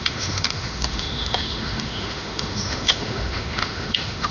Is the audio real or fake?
fake